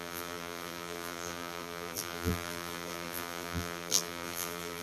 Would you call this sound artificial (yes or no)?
yes